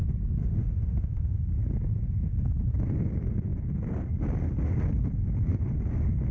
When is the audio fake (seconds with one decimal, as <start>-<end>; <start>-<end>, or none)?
0.4-1.5